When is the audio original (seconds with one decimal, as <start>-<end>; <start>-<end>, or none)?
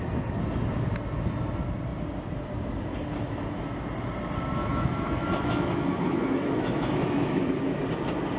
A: 0.0-4.6; 7.8-8.4